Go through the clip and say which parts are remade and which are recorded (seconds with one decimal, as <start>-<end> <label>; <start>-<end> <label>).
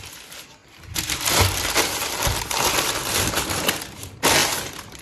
0.0-0.6 recorded; 0.6-3.6 remade; 3.6-5.0 recorded